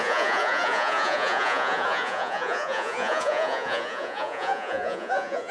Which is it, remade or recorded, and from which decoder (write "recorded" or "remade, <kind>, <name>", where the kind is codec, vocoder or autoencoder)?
remade, vocoder, Vocos